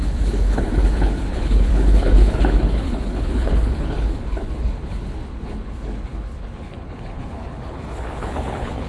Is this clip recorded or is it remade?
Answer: remade